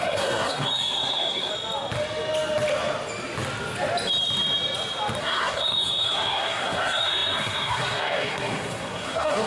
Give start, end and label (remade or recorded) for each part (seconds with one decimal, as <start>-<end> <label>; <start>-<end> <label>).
0.0-1.5 remade; 1.5-5.2 recorded; 5.2-9.5 remade